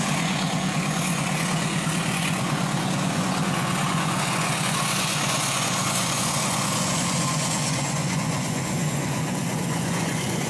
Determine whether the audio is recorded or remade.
remade